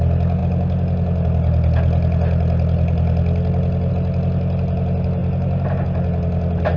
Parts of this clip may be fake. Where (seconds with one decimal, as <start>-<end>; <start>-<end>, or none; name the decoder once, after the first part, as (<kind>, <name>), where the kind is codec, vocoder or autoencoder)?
none